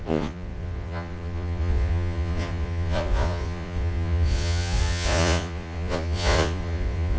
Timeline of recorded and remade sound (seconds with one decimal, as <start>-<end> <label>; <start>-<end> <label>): 0.0-7.2 remade